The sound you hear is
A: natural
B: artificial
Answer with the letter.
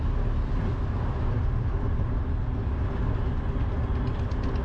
A